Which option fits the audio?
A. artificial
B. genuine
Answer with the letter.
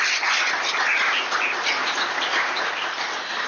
B